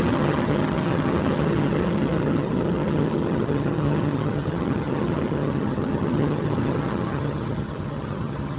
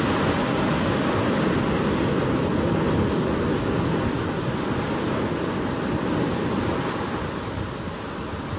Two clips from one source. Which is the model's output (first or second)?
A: first